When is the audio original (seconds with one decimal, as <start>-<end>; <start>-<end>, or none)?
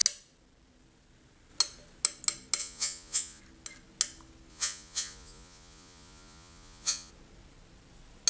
0.0-2.6; 3.4-4.5; 7.1-8.3